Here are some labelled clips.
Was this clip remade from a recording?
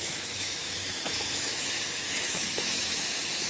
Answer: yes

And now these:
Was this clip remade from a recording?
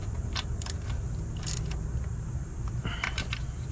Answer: yes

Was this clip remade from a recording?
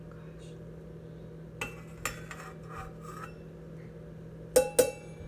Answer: no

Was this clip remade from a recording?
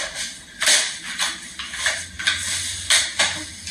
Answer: no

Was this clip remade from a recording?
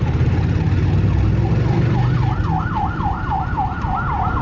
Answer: no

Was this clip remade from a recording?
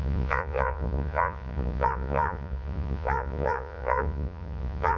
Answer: yes